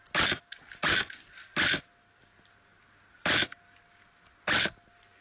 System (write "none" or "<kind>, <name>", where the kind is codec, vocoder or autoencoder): none